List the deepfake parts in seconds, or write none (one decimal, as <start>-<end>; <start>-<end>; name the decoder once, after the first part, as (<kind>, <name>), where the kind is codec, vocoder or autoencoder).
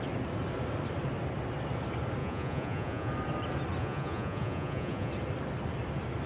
2.2-3.1 (vocoder, Vocos); 3.8-5.1